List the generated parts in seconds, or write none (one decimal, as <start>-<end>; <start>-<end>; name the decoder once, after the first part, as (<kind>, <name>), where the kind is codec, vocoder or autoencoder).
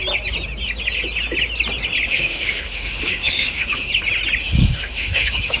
2.1-3.9 (autoencoder, DAC-VAE); 4.4-5.6